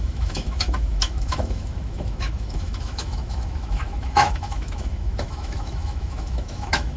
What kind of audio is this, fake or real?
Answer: fake